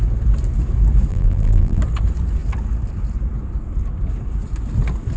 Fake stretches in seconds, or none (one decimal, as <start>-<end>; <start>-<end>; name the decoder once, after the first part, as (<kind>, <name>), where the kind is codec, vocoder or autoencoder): 1.1-1.8 (vocoder, BigVGAN v2)